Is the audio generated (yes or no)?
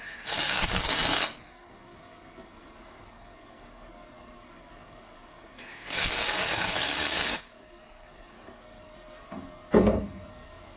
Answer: yes